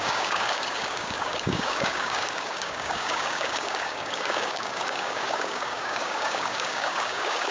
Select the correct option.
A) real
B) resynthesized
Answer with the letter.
B